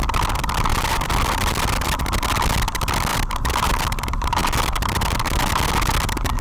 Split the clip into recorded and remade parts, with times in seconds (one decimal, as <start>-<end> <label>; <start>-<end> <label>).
0.0-0.7 recorded; 0.7-2.0 remade; 2.0-3.1 recorded; 3.1-3.8 remade; 3.8-4.4 recorded; 4.4-5.5 remade; 5.5-6.4 recorded